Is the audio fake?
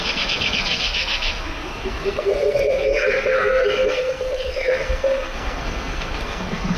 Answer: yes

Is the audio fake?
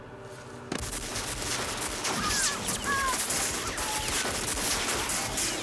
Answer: no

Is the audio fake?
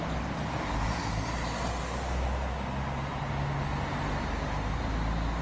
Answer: no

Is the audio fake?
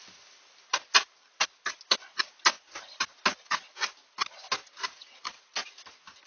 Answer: no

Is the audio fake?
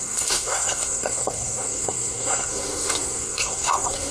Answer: yes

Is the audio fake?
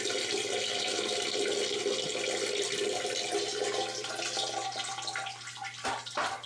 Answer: no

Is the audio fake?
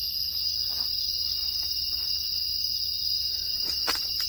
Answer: no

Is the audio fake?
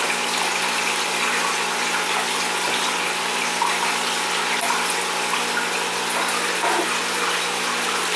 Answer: no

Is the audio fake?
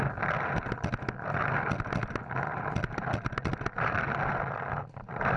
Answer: no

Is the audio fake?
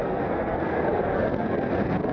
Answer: yes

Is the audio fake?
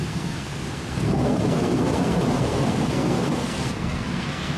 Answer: yes